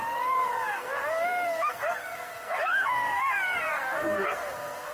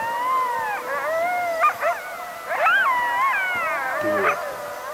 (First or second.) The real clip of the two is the second